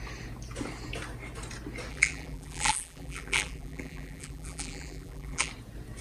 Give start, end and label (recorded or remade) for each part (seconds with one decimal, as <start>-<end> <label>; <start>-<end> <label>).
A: 0.0-1.9 recorded; 1.9-5.5 remade; 5.5-6.0 recorded